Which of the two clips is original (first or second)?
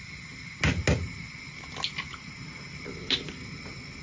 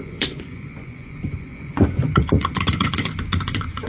first